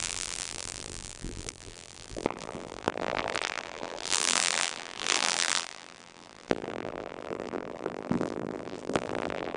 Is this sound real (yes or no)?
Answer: no